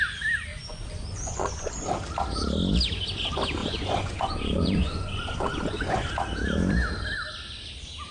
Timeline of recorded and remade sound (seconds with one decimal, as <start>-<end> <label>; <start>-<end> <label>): 0.0-0.5 recorded; 0.5-1.9 remade; 1.9-3.6 recorded; 3.6-6.1 remade; 6.1-8.1 recorded